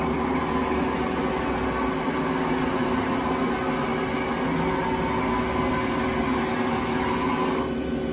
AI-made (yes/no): no